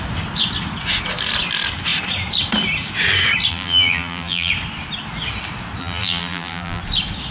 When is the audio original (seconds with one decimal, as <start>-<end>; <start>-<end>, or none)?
0.0-3.5; 4.5-5.8; 6.8-7.3